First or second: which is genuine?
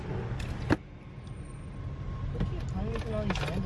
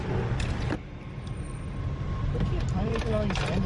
first